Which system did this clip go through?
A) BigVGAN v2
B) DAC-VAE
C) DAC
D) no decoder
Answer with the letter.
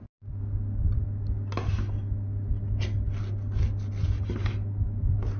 D